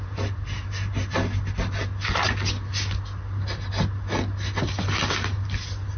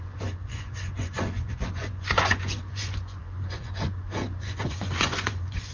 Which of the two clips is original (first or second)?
first